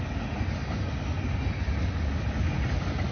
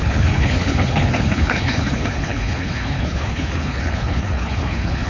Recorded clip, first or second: first